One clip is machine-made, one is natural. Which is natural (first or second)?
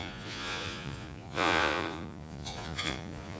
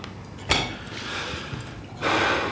second